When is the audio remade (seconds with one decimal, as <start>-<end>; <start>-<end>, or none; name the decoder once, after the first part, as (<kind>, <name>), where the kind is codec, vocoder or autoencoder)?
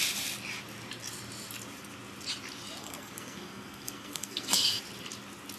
2.8-4.8 (codec, SNAC)